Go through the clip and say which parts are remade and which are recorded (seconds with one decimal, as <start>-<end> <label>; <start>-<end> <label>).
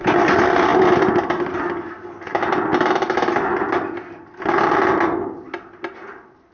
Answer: 0.0-0.7 remade; 0.7-1.4 recorded; 1.4-2.3 remade; 2.3-6.1 recorded; 6.1-6.5 remade